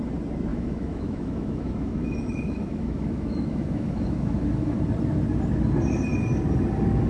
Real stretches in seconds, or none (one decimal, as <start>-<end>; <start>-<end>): 0.0-0.5; 4.8-7.1